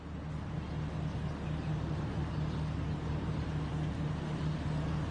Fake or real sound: real